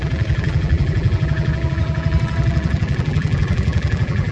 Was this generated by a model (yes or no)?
yes